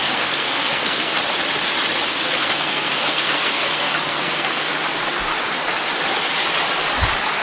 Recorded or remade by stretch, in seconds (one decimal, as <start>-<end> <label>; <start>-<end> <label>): 0.0-1.1 remade; 1.1-2.1 recorded; 2.1-4.7 remade; 4.7-7.4 recorded